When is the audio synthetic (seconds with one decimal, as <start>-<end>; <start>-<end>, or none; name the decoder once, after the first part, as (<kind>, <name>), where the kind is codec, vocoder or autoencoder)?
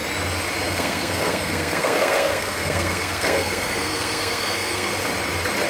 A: 0.7-4.9 (codec, SNAC)